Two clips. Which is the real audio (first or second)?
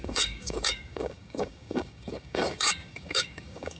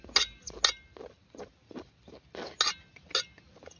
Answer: second